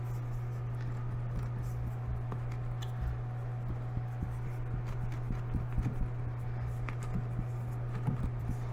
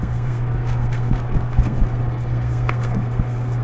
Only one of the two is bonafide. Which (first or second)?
first